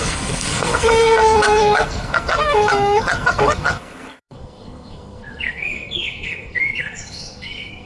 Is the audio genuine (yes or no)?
no